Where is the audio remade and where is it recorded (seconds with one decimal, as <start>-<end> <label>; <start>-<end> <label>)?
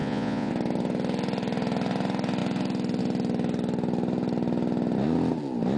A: 0.0-0.5 remade; 0.5-5.8 recorded